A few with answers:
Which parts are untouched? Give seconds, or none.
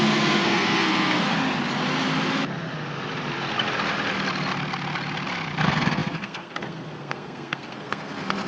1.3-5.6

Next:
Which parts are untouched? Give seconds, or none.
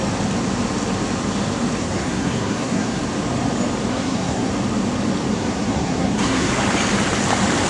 0.0-1.8; 3.0-3.9; 4.5-5.3; 6.5-7.7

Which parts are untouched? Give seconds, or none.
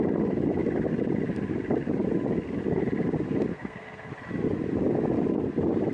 0.0-3.5; 4.1-5.9